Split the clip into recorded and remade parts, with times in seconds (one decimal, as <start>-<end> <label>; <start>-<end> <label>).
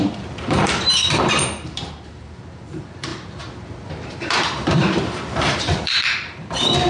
0.0-6.9 remade